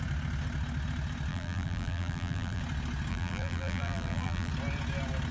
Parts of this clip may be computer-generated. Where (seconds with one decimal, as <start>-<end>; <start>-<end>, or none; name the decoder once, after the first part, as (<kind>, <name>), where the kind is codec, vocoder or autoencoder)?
1.3-2.6 (vocoder, BigVGAN v2); 3.1-4.5